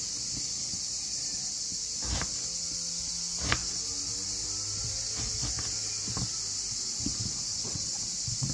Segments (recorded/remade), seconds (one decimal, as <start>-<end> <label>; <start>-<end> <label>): 0.0-7.5 recorded; 7.5-8.0 remade; 8.0-8.5 recorded